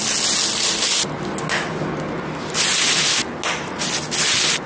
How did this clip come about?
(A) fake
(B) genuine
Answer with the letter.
B